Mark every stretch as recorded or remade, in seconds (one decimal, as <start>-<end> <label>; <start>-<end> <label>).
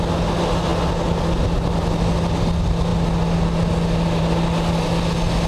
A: 0.0-5.5 recorded